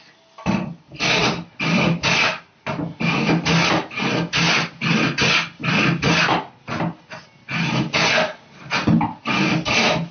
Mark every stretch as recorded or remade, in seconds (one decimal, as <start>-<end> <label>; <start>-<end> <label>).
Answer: 0.0-10.1 recorded